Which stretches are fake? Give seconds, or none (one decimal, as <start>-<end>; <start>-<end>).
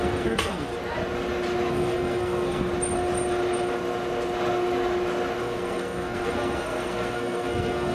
0.0-0.7; 1.7-2.7; 5.4-7.9